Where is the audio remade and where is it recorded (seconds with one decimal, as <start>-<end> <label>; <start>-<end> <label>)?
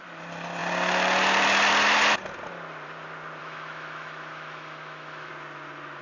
0.0-3.4 recorded; 3.4-5.3 remade; 5.3-6.0 recorded